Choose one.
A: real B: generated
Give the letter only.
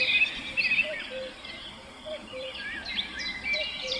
B